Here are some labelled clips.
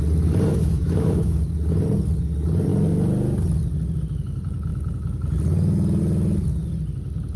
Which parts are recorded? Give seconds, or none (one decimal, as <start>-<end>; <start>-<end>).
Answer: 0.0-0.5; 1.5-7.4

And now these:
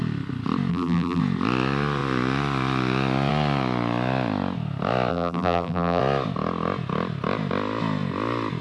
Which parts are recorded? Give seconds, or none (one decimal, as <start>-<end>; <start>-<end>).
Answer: 0.0-0.7; 1.2-5.1; 6.0-8.6

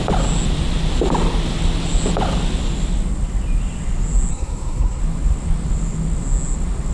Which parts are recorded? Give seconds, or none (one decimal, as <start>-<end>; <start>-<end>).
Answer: 0.0-4.3; 5.0-6.9

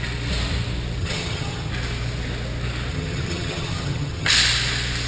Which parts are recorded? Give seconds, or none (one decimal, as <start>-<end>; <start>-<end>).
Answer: 0.0-1.0; 1.7-2.9; 4.3-5.1